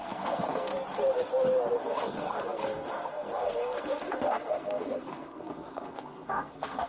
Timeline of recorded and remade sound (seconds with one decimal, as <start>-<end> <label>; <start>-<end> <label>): 0.0-0.7 remade; 0.7-1.8 recorded; 1.8-6.9 remade